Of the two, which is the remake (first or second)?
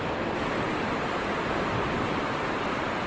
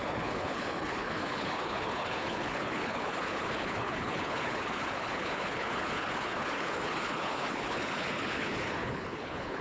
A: second